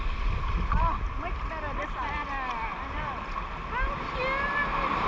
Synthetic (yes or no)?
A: no